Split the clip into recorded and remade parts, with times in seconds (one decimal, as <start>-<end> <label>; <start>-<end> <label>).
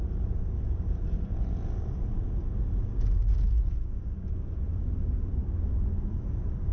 0.0-2.2 remade; 2.2-3.7 recorded; 3.7-5.4 remade; 5.4-6.1 recorded; 6.1-6.7 remade